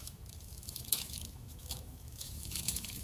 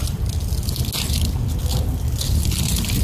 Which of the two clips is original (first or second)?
second